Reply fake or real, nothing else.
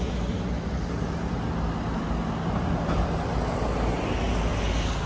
real